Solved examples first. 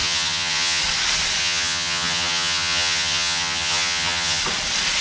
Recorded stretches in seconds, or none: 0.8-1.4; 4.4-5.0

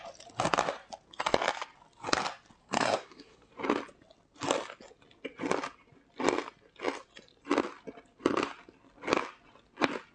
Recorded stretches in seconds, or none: 0.0-2.6; 3.5-10.1